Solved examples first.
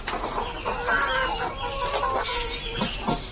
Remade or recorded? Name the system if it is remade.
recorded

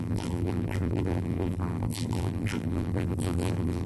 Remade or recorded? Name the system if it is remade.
remade, vocoder, BigVGAN v2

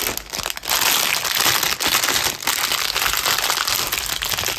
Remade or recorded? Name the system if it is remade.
recorded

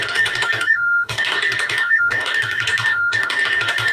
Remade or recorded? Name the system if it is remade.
remade, codec, DAC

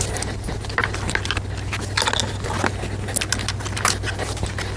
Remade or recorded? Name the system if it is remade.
recorded